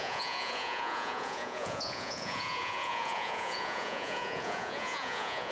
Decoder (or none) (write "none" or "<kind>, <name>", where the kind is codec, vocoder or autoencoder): vocoder, Vocos